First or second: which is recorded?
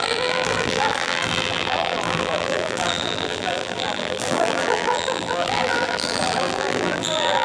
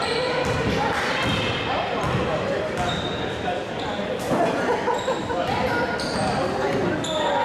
second